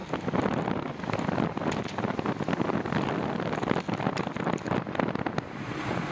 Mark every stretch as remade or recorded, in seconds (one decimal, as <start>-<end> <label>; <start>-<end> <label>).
0.0-6.1 recorded